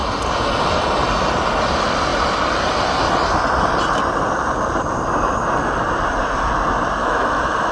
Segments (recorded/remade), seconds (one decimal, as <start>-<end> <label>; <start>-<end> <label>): 0.0-7.0 recorded; 7.0-7.7 remade